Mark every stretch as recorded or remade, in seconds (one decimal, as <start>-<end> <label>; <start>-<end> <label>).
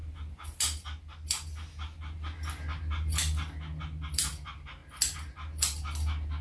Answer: 0.0-6.4 recorded